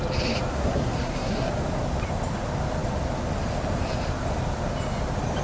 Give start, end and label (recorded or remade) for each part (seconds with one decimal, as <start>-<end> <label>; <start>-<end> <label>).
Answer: 0.0-0.5 recorded; 0.5-1.5 remade; 1.5-5.4 recorded